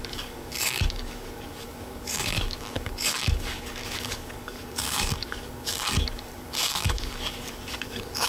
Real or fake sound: fake